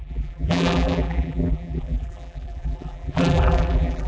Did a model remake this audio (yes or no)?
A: yes